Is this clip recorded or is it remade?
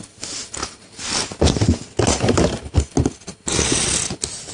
recorded